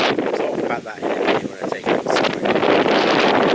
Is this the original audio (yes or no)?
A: yes